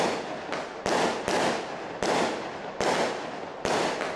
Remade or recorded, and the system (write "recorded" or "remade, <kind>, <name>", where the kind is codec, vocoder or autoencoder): recorded